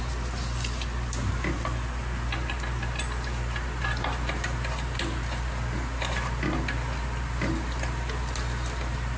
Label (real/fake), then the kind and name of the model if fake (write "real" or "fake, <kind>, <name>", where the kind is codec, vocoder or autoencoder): real